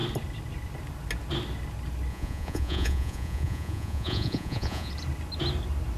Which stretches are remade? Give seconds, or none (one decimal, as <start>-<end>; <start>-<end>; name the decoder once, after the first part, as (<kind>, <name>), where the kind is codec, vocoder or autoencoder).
2.1-4.9 (vocoder, Vocos)